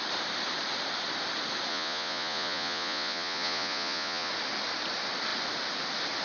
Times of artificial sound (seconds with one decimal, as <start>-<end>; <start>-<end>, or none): 1.7-4.3